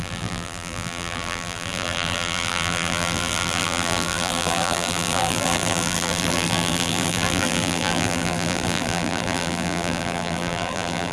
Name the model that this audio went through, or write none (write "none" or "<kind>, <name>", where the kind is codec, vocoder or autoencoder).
vocoder, BigVGAN v2